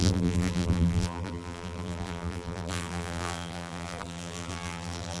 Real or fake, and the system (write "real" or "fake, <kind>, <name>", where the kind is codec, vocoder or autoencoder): fake, vocoder, BigVGAN v2